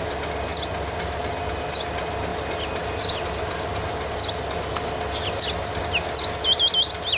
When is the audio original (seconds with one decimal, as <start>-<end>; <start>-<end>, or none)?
0.0-7.2